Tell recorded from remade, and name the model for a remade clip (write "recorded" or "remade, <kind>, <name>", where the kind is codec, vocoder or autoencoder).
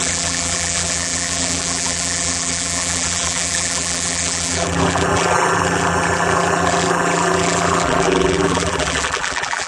remade, vocoder, BigVGAN v2